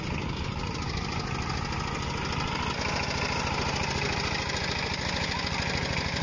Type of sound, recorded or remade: recorded